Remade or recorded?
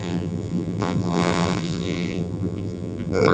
remade